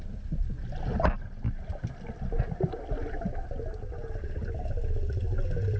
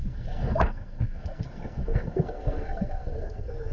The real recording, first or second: first